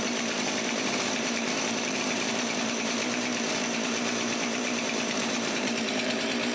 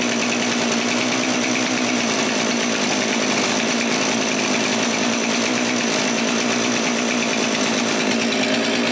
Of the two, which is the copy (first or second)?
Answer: first